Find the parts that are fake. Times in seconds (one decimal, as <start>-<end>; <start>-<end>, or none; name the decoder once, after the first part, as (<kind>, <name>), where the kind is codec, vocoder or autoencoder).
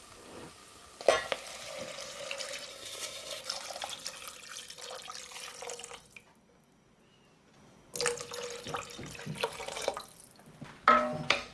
2.7-3.4 (codec, SNAC)